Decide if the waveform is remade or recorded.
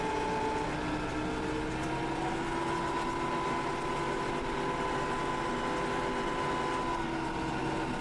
recorded